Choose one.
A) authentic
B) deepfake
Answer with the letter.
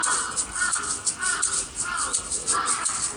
A